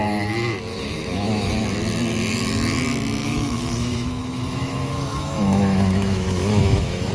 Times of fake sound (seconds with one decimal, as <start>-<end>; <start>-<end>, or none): 0.7-1.5; 3.2-7.1